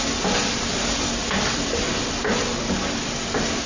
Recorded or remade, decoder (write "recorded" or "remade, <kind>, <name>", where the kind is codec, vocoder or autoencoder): recorded